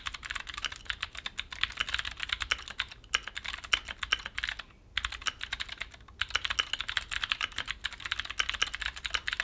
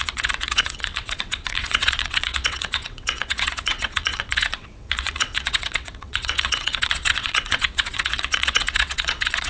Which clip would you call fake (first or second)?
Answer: second